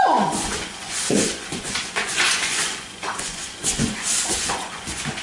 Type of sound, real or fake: fake